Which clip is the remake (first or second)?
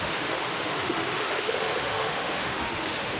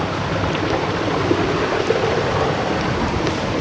first